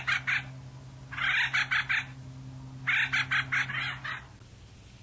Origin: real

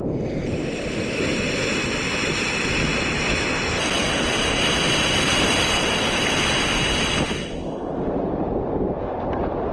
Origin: real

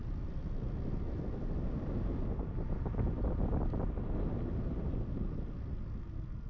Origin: real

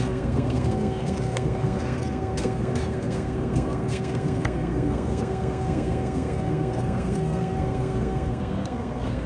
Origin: fake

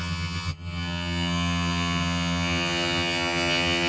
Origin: fake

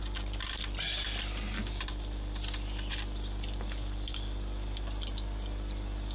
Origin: real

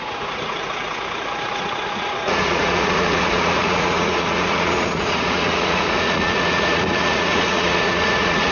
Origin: fake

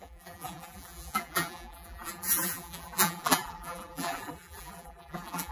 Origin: fake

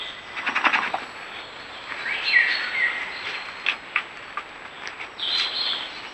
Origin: real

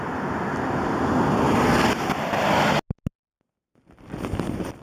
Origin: real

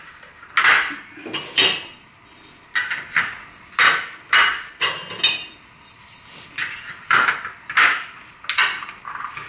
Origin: real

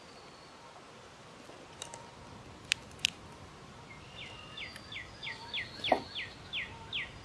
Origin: real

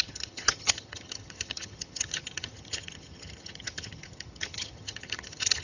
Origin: fake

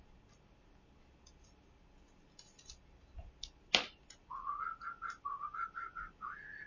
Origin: real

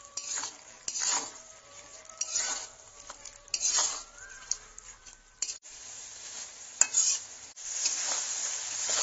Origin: fake